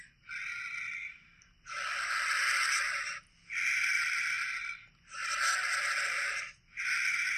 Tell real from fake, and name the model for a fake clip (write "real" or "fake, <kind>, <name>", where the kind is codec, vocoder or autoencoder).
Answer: real